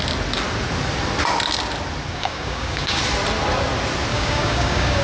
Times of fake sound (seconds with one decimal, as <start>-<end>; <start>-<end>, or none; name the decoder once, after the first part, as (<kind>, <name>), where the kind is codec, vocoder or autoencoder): 2.1-3.0 (codec, DAC); 4.1-5.0